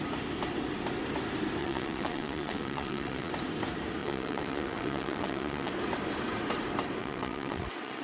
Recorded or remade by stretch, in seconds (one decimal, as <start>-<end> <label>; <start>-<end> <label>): 0.0-1.6 recorded; 1.6-3.3 remade; 3.3-4.0 recorded; 4.0-5.7 remade; 5.7-7.0 recorded; 7.0-8.0 remade